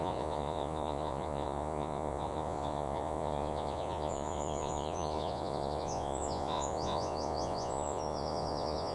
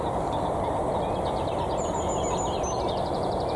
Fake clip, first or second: first